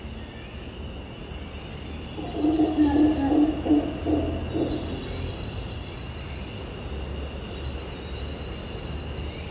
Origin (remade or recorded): recorded